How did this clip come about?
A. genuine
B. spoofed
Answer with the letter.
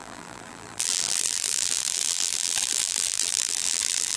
B